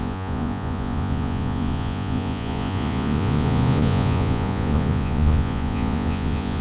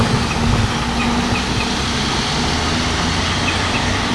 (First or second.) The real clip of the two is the second